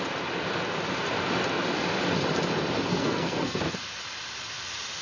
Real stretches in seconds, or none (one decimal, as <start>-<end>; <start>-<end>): 0.0-2.9; 3.6-5.0